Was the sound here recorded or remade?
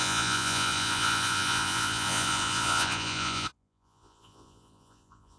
remade